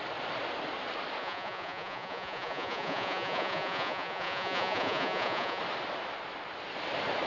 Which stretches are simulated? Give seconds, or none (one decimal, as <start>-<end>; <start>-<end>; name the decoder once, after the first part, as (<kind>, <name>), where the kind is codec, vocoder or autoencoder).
1.2-5.6 (vocoder, Vocos)